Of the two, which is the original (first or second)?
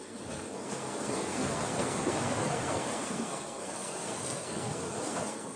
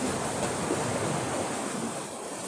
second